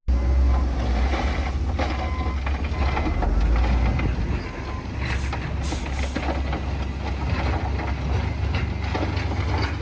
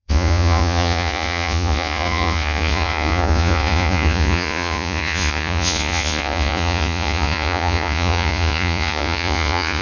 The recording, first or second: first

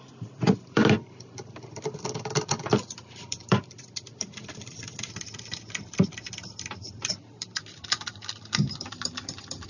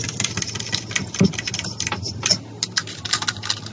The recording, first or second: second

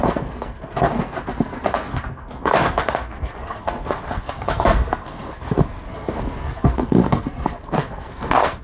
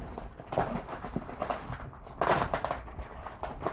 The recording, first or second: second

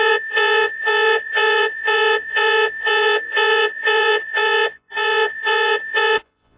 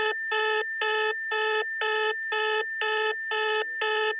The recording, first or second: second